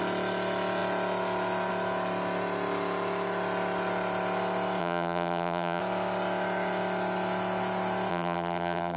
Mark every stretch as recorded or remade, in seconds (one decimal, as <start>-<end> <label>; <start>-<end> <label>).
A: 0.0-4.8 recorded; 4.8-5.8 remade; 5.8-8.1 recorded; 8.1-9.0 remade

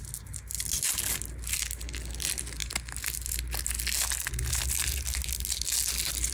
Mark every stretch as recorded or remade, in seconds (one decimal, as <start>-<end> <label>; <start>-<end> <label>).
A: 0.0-6.3 recorded

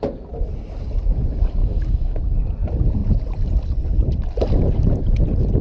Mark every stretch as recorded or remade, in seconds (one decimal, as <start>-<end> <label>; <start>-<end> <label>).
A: 0.0-1.6 recorded; 1.6-2.2 remade; 2.2-5.6 recorded

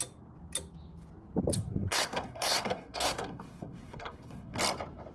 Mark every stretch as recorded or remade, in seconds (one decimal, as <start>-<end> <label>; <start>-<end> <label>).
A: 0.0-1.5 recorded; 1.5-4.6 remade; 4.6-5.1 recorded